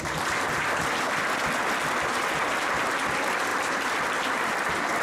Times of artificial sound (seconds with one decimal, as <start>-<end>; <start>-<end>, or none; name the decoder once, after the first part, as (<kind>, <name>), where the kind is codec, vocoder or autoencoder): none